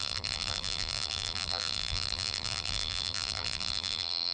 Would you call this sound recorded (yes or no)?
no